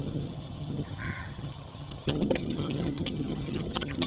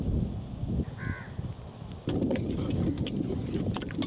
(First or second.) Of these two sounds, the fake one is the first